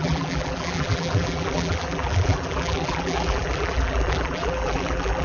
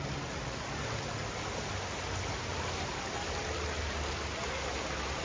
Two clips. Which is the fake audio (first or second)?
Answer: first